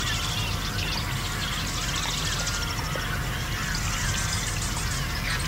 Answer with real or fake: real